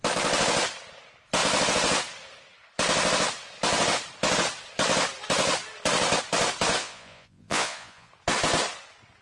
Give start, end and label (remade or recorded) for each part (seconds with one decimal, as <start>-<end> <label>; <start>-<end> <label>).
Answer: 0.0-6.8 recorded; 6.8-8.1 remade; 8.1-9.2 recorded